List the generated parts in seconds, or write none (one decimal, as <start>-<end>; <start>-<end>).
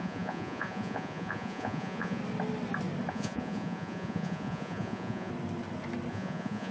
0.0-2.2; 3.1-5.3; 6.1-6.7